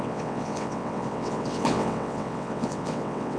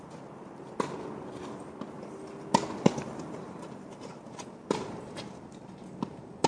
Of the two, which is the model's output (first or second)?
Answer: first